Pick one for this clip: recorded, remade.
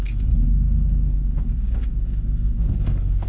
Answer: remade